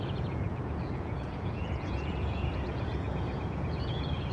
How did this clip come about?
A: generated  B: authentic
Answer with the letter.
A